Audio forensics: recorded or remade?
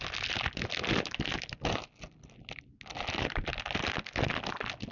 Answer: recorded